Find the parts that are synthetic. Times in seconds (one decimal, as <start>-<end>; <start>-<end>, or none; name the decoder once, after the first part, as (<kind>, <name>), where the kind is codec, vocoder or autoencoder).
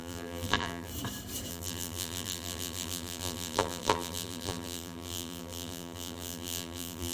0.0-0.9 (vocoder, BigVGAN v2); 1.5-7.1